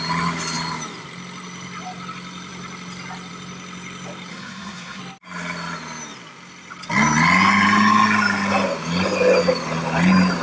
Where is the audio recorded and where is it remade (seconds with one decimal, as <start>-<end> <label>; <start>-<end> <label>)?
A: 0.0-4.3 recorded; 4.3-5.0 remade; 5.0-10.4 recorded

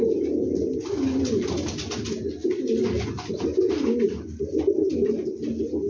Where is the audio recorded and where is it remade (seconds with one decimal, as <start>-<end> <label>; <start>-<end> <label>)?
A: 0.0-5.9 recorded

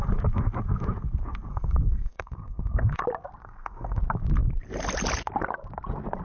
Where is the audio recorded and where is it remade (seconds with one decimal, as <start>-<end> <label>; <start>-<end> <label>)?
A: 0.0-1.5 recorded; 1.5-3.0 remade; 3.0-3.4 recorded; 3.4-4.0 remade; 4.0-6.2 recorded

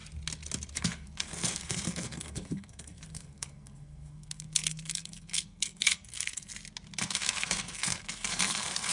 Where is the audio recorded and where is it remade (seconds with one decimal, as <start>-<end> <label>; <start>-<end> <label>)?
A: 0.0-0.7 recorded; 0.7-6.5 remade; 6.5-7.0 recorded; 7.0-8.9 remade

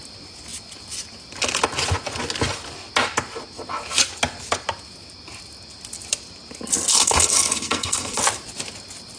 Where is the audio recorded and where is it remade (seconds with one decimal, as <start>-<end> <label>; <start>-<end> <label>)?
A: 0.0-6.9 recorded; 6.9-8.2 remade; 8.2-9.2 recorded

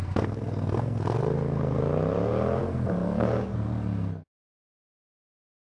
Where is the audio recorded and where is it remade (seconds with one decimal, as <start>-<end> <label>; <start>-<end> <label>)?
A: 0.0-1.8 remade; 1.8-2.6 recorded; 2.6-5.6 remade

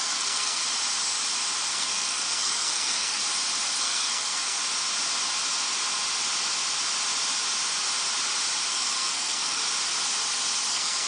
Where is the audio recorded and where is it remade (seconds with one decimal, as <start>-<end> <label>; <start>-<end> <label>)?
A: 0.0-0.6 remade; 0.6-1.7 recorded; 1.7-3.2 remade; 3.2-3.8 recorded; 3.8-4.6 remade; 4.6-8.7 recorded; 8.7-9.6 remade; 9.6-10.7 recorded; 10.7-11.1 remade